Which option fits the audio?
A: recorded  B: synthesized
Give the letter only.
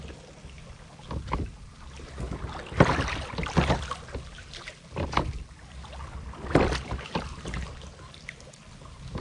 A